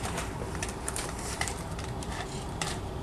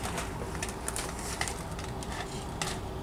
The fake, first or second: first